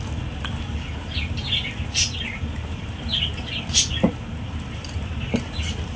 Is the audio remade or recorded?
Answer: recorded